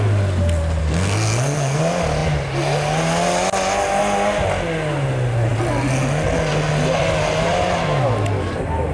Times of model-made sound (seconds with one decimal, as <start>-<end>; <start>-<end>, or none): 0.8-1.8